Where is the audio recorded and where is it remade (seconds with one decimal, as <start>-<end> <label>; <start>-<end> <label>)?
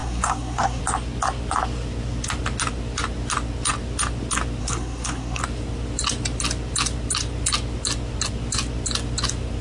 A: 0.0-0.8 remade; 0.8-4.6 recorded; 4.6-5.4 remade; 5.4-9.6 recorded